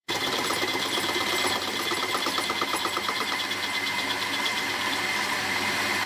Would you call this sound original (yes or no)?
no